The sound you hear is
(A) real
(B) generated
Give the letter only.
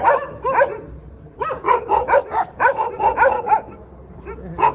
A